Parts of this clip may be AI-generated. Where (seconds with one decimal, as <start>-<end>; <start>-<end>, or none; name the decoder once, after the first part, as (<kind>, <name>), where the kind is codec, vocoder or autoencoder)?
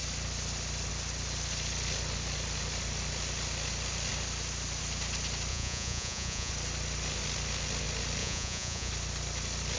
5.5-6.5 (vocoder, Vocos); 8.2-8.9